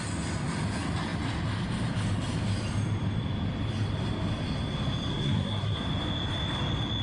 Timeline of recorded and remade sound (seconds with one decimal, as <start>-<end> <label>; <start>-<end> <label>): 0.0-5.1 recorded; 5.1-5.8 remade; 5.8-7.0 recorded